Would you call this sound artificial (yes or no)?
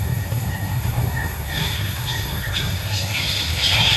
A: yes